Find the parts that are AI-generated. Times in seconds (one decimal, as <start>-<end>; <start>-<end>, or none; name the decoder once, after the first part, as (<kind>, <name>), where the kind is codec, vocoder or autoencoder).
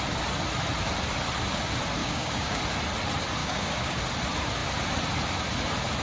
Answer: 2.0-2.6 (codec, DAC); 3.4-4.0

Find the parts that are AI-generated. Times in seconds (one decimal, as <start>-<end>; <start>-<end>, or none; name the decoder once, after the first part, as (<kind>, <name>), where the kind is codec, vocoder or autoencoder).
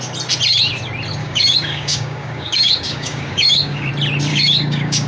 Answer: 1.2-3.9 (codec, DAC); 4.3-5.1